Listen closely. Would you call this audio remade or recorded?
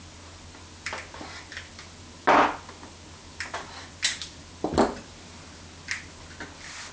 recorded